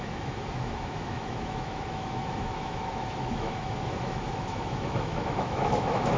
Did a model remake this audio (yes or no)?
yes